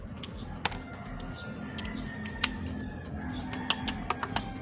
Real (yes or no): yes